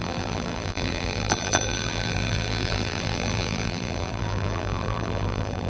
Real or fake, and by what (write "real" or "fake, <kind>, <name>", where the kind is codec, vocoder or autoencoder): fake, vocoder, BigVGAN v2